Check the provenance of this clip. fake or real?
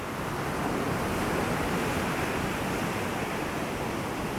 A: real